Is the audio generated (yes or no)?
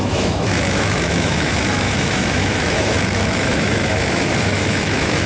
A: yes